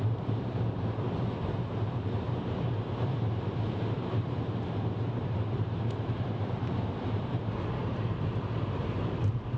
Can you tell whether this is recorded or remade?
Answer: remade